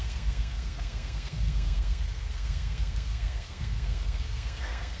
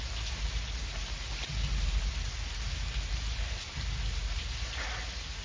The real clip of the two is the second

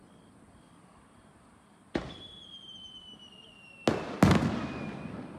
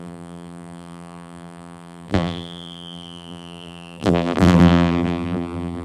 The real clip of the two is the first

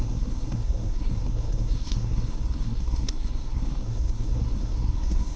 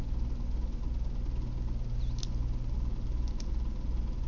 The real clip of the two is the second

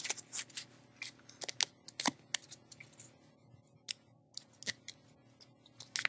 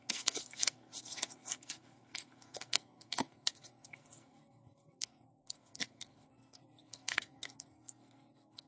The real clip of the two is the first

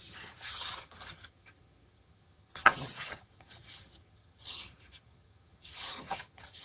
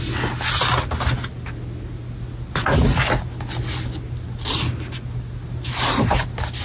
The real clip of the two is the second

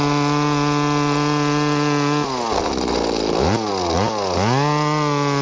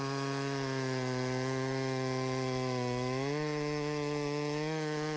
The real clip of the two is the first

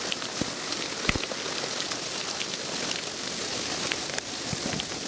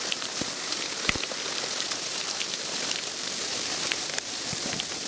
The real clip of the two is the first